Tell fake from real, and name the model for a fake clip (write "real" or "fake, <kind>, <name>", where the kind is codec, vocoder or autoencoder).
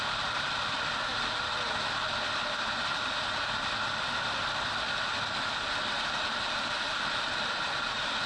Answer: fake, vocoder, BigVGAN v2